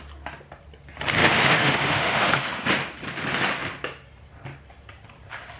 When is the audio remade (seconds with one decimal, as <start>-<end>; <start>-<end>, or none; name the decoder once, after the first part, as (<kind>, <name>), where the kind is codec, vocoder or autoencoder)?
1.2-2.7 (autoencoder, DAC-VAE)

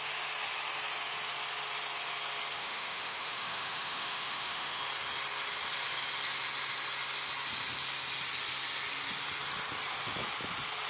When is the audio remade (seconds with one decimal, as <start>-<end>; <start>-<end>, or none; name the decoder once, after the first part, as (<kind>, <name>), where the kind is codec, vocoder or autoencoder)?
2.6-4.8 (autoencoder, DAC-VAE)

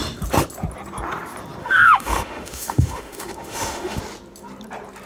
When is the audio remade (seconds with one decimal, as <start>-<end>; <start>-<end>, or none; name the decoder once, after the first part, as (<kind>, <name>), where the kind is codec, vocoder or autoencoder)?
1.6-4.0 (autoencoder, DAC-VAE)

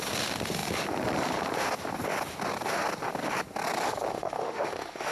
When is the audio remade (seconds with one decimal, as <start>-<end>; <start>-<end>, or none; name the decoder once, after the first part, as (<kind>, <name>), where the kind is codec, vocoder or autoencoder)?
4.1-5.1 (autoencoder, DAC-VAE)

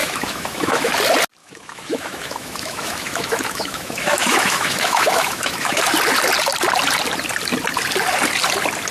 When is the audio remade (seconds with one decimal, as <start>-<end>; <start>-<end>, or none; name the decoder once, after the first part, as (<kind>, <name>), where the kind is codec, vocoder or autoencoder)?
0.0-0.9 (autoencoder, DAC-VAE); 1.4-5.8

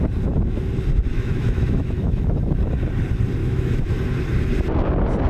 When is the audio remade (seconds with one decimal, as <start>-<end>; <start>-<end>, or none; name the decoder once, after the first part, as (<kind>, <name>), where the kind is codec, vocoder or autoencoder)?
1.1-2.7 (autoencoder, DAC-VAE); 3.4-3.9

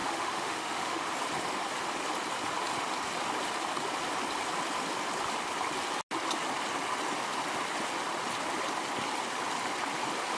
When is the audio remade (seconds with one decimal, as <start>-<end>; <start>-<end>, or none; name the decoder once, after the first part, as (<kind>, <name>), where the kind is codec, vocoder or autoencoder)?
0.0-1.1 (autoencoder, DAC-VAE)

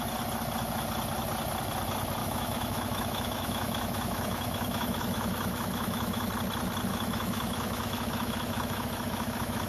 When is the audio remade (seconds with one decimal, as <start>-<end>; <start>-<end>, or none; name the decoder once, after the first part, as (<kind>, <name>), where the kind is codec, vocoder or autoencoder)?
2.2-6.3 (autoencoder, DAC-VAE); 6.9-9.7